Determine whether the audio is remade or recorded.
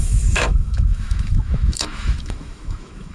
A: remade